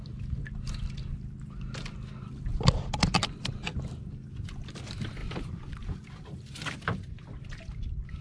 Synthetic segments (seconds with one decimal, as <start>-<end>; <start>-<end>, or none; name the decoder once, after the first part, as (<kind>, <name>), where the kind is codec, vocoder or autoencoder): none